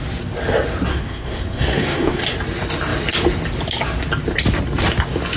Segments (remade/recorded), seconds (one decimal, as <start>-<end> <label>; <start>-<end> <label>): 0.0-0.9 recorded; 0.9-2.2 remade; 2.2-5.4 recorded